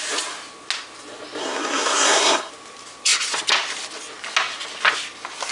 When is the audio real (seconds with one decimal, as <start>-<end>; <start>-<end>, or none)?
0.0-1.4; 2.5-5.5